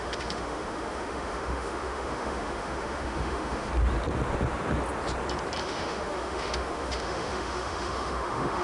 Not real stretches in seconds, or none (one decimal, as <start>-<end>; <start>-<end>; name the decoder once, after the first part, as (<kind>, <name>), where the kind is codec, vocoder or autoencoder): 0.0-3.7 (autoencoder, DAC-VAE); 5.6-8.6